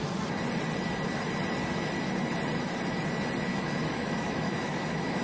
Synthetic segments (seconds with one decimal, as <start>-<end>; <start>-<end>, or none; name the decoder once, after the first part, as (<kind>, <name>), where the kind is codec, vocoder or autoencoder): 3.5-5.2 (autoencoder, DAC-VAE)